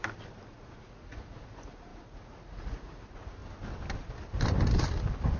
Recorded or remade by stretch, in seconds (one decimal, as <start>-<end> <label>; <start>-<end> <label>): 0.0-0.5 recorded; 0.5-3.4 remade; 3.4-5.4 recorded